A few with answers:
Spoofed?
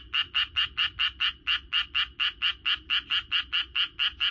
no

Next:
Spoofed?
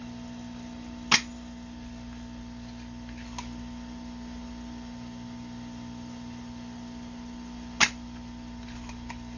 no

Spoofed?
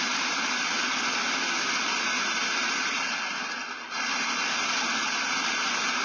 no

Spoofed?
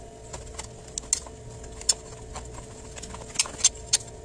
no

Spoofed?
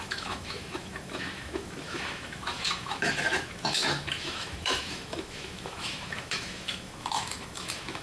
yes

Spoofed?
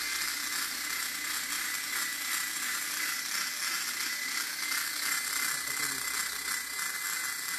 no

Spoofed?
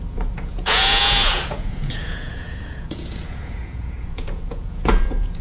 yes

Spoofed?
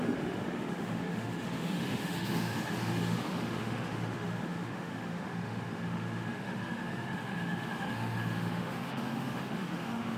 yes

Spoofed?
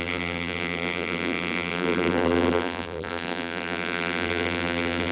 yes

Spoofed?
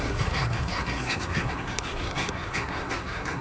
yes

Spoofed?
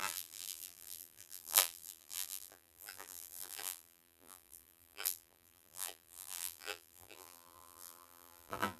yes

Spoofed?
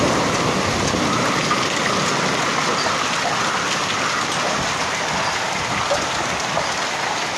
no